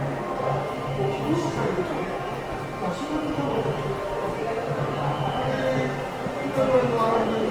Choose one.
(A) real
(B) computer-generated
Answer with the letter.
A